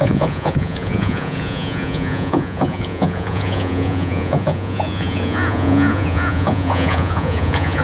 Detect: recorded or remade remade